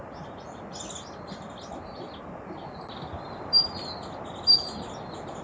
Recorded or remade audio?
recorded